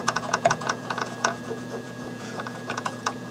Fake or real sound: fake